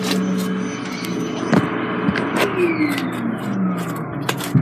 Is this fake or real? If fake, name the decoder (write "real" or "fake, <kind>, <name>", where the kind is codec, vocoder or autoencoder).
real